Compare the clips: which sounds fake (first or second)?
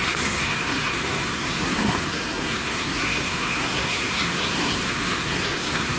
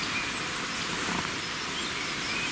first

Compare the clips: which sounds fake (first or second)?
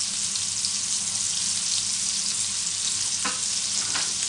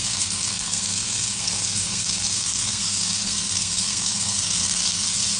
second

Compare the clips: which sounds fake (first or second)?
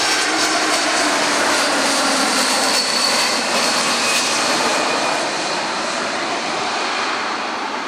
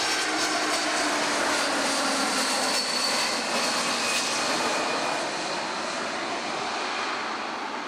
first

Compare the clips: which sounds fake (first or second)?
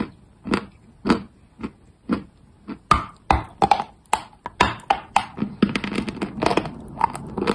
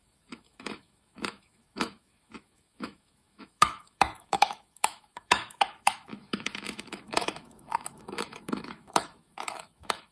second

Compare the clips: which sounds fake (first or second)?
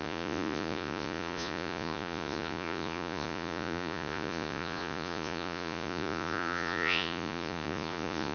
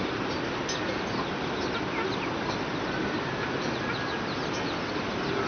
first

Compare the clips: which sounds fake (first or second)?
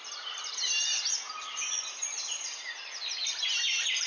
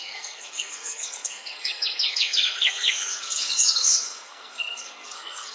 second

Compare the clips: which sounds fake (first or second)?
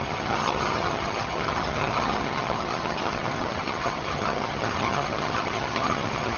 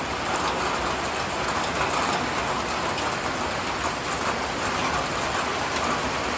first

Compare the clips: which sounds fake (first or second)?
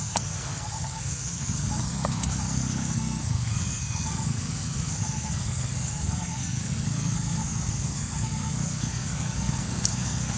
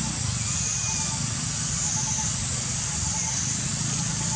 first